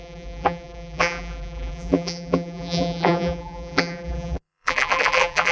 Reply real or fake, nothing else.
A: fake